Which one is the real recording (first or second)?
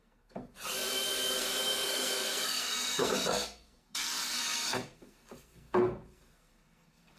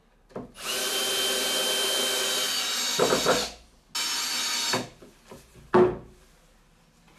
second